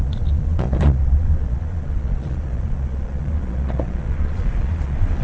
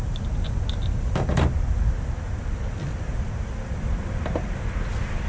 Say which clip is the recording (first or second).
second